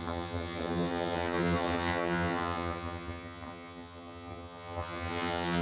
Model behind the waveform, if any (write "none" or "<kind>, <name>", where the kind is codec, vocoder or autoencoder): vocoder, HiFi-GAN